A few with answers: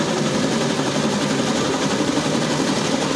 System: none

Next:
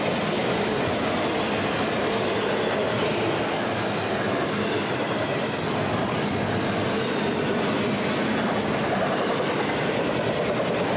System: none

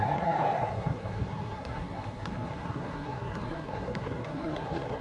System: codec, SNAC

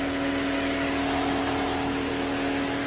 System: none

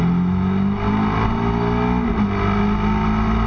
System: none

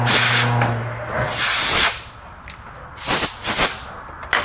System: none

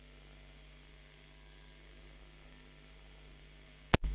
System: codec, SNAC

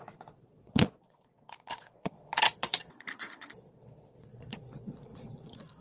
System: vocoder, Vocos